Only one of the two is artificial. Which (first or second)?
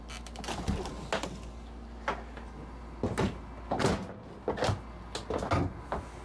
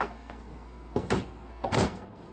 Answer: second